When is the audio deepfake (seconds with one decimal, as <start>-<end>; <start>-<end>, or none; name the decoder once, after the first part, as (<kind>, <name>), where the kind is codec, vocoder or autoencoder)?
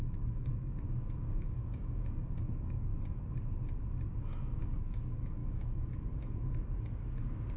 0.0-2.9 (codec, DAC); 4.6-7.6